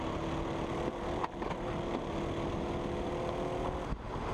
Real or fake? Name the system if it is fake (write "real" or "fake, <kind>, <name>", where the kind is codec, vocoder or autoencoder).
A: real